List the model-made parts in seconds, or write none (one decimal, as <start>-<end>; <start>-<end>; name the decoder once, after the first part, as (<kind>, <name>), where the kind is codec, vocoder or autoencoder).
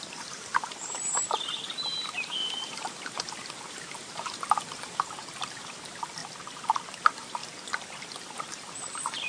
0.0-6.2 (vocoder, BigVGAN v2); 7.0-7.4; 8.4-9.3